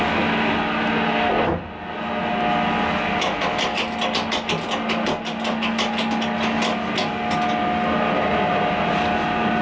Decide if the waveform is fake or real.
real